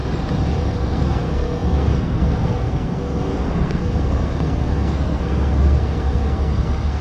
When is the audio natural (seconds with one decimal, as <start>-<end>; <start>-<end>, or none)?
0.0-0.6